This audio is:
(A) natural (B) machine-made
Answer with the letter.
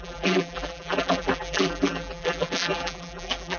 B